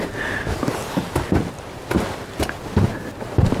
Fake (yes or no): no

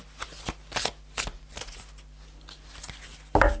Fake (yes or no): no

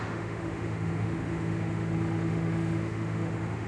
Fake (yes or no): yes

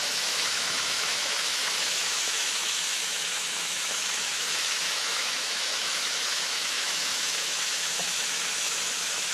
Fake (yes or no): yes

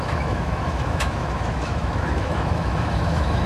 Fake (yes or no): yes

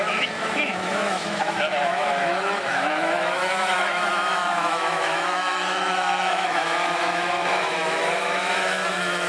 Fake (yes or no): yes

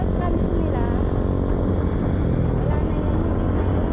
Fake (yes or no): no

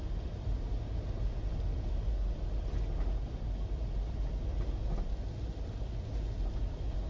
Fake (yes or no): no